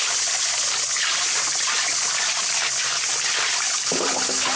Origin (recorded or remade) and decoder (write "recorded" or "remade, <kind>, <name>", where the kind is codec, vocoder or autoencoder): recorded